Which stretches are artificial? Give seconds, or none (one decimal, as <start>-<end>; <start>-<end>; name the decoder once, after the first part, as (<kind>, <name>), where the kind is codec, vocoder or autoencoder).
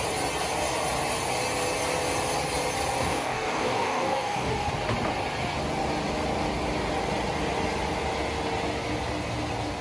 3.0-4.7 (codec, DAC)